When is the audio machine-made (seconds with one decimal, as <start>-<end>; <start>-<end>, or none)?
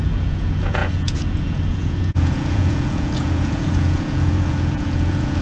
0.0-5.4